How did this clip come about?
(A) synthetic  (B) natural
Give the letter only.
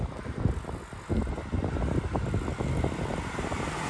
B